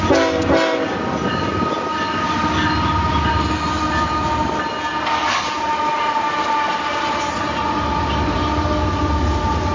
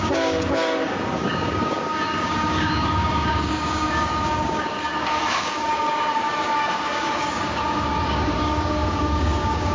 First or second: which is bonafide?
first